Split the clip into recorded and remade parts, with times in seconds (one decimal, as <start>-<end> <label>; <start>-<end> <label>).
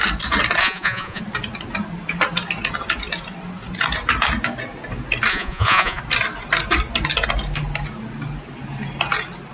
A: 0.0-0.6 recorded; 0.6-1.2 remade; 1.2-5.3 recorded; 5.3-6.0 remade; 6.0-9.5 recorded